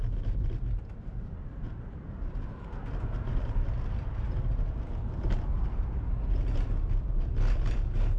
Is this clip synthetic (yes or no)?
no